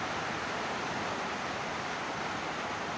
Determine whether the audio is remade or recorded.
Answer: recorded